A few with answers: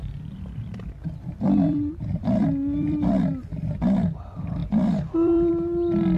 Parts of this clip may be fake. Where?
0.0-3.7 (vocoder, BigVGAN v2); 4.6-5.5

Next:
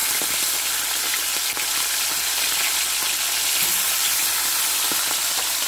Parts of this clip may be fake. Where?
none

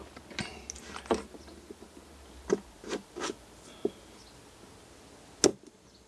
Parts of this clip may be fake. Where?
5.5-6.1 (vocoder, BigVGAN v2)